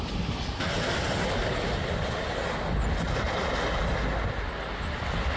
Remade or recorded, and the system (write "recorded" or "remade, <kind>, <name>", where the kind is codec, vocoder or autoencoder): recorded